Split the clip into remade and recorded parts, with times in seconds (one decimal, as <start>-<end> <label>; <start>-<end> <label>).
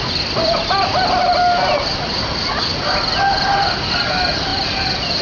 0.0-5.2 recorded